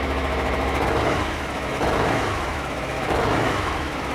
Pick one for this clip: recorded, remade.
remade